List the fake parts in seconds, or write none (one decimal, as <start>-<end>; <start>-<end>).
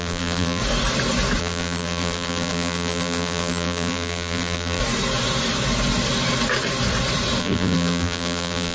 0.0-0.6; 1.4-4.8; 7.4-8.7